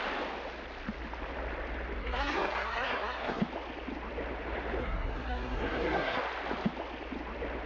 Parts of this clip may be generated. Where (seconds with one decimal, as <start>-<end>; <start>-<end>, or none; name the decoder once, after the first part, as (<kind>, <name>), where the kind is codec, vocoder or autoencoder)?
2.0-3.4 (codec, SNAC); 4.8-6.2